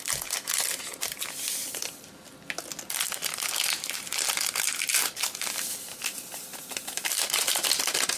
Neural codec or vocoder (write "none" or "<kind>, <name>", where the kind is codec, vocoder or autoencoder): none